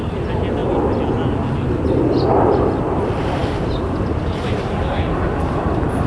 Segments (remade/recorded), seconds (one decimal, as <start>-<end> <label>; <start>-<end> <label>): 0.0-6.1 recorded